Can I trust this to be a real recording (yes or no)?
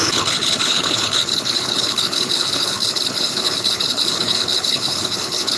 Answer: no